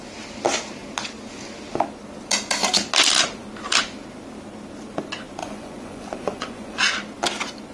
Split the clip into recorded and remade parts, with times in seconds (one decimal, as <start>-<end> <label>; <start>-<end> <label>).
0.0-5.4 recorded; 5.4-6.8 remade; 6.8-7.7 recorded